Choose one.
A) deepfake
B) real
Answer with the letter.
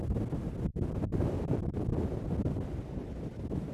B